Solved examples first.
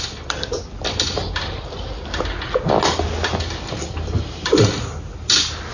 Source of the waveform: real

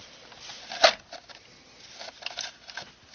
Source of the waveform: real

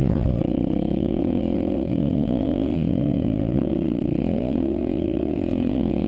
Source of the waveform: fake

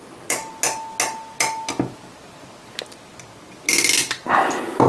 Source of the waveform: real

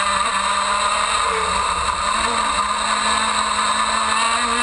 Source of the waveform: real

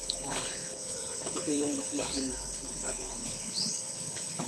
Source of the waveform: fake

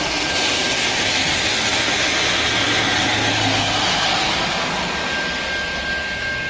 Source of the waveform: real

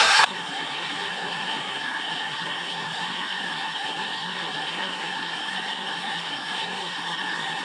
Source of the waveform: fake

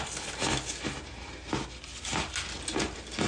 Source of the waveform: real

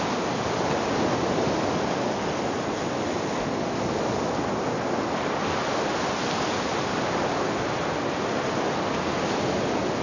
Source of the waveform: real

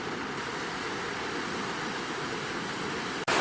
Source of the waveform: real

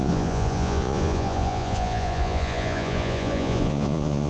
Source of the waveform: fake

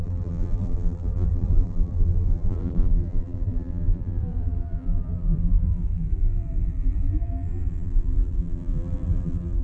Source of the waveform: fake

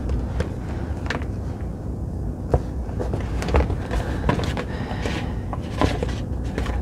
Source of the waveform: real